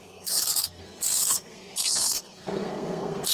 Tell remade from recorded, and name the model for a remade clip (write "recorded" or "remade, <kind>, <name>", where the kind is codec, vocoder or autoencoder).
remade, codec, SNAC